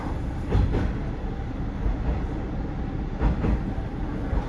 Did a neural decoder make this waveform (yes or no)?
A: no